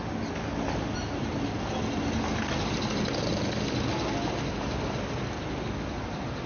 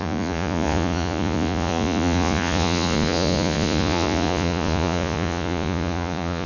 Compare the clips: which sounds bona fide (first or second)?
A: first